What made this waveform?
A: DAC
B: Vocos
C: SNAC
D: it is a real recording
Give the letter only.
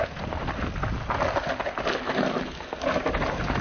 D